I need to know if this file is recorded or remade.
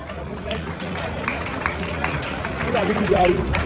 remade